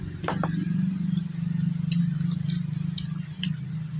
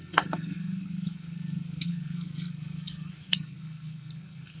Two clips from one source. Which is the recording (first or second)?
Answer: first